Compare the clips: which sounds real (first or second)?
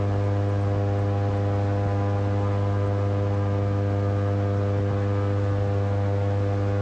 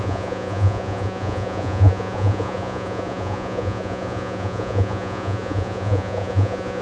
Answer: first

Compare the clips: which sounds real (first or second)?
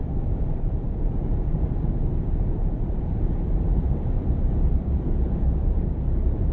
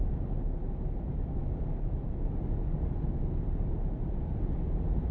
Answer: second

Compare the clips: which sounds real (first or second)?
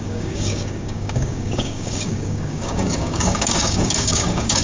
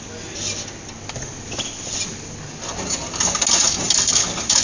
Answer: second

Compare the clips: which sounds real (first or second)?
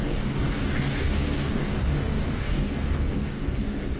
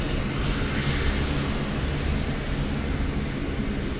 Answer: second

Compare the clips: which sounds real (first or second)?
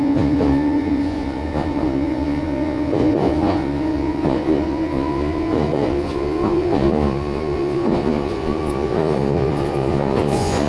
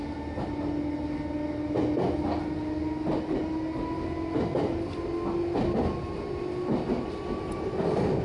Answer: second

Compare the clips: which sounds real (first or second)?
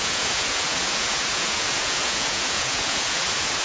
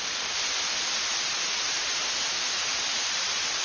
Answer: second